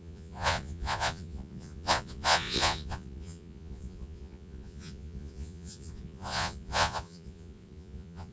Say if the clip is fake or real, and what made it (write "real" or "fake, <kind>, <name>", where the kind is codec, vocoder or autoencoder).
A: fake, vocoder, Vocos